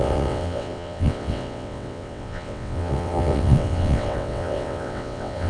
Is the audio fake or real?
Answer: fake